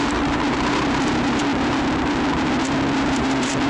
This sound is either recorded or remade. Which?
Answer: remade